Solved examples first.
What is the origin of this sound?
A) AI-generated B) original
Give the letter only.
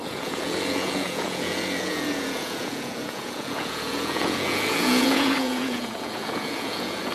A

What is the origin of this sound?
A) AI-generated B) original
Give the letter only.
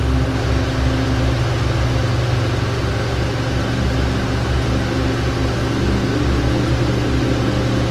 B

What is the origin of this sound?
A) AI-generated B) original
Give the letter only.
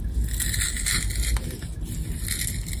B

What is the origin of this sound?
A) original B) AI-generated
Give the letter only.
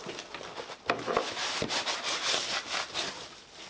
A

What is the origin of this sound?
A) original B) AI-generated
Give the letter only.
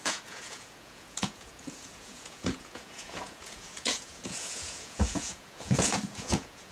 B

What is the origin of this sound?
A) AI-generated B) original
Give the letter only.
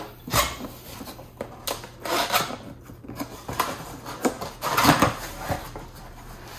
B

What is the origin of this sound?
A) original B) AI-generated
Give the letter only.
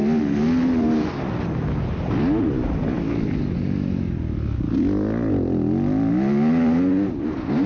A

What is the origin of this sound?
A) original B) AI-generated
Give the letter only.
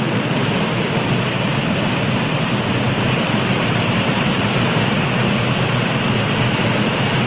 A